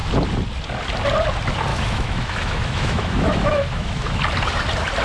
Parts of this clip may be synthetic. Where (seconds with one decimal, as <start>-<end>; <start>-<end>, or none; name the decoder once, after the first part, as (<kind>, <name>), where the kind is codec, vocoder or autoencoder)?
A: 1.7-4.2 (autoencoder, DAC-VAE)